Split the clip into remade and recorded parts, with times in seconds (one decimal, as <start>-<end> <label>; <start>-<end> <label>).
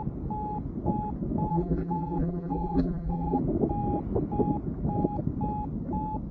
0.0-1.5 recorded; 1.5-3.4 remade; 3.4-6.3 recorded